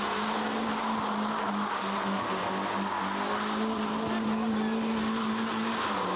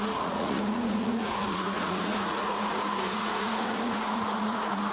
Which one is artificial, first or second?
second